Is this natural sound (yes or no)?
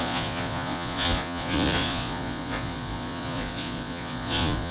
no